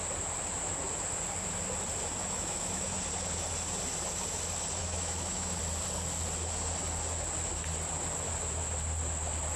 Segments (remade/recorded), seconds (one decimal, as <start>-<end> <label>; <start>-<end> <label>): 0.0-2.2 recorded; 2.2-3.0 remade; 3.0-4.8 recorded; 4.8-5.6 remade; 5.6-9.6 recorded